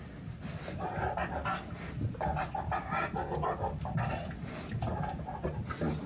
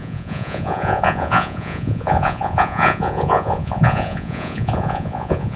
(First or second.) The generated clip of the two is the second